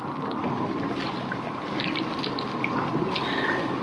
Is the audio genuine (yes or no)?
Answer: yes